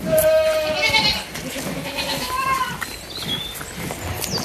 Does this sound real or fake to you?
real